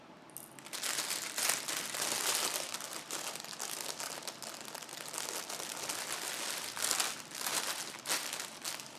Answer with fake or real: real